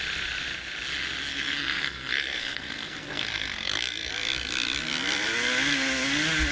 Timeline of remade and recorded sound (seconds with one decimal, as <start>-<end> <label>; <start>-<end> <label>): 0.0-1.3 recorded; 1.3-4.1 remade; 4.1-6.5 recorded